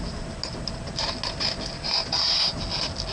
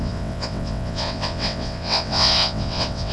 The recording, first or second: first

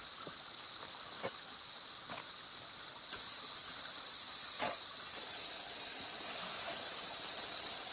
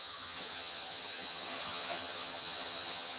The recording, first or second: first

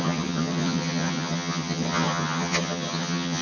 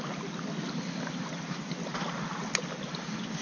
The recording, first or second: second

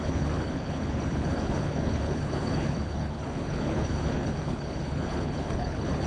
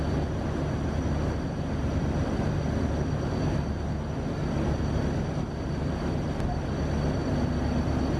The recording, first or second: second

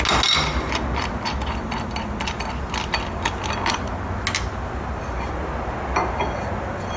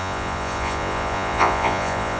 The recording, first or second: first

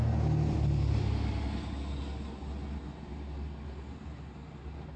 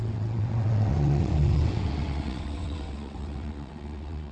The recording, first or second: first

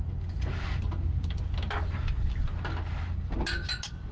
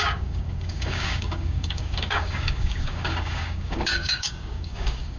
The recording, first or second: first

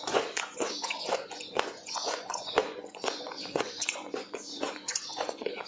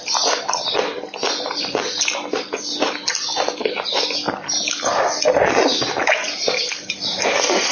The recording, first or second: second